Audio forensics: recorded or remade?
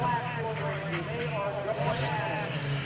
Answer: remade